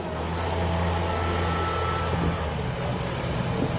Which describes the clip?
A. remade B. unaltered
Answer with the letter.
B